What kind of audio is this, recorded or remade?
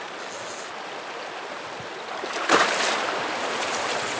recorded